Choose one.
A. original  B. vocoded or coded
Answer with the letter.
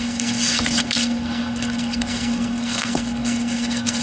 B